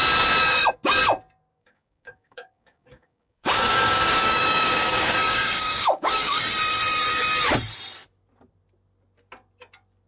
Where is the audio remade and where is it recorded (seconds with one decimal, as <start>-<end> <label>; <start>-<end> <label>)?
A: 0.0-1.6 recorded; 1.6-6.4 remade; 6.4-10.1 recorded

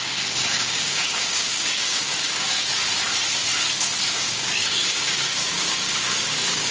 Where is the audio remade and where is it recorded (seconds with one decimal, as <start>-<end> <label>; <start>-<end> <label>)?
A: 0.0-2.8 remade; 2.8-4.1 recorded; 4.1-6.7 remade

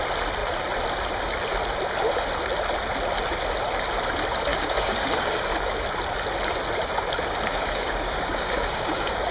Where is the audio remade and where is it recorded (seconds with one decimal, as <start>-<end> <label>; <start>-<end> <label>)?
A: 0.0-4.5 recorded; 4.5-5.5 remade; 5.5-7.5 recorded; 7.5-9.3 remade

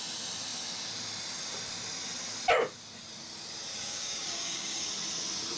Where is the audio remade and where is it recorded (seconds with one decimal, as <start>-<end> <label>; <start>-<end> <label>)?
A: 0.0-3.7 recorded; 3.7-4.9 remade; 4.9-5.6 recorded